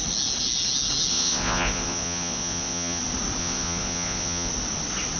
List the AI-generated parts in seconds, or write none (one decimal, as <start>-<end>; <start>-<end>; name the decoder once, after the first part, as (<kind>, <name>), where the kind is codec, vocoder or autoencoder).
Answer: 1.1-3.0 (vocoder, Vocos); 3.4-4.5